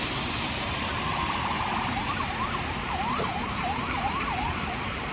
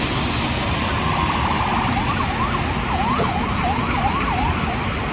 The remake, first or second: first